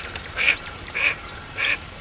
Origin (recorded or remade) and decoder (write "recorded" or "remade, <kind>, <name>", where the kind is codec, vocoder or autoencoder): remade, vocoder, BigVGAN v2